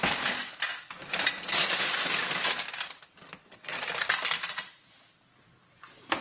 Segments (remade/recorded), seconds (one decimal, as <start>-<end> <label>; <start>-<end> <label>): 0.0-6.2 recorded